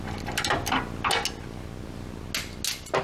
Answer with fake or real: real